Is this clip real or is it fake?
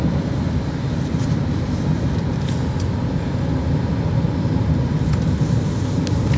real